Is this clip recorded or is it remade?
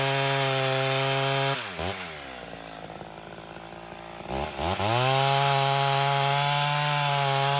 recorded